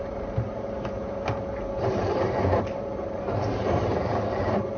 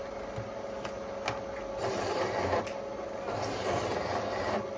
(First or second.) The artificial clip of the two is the first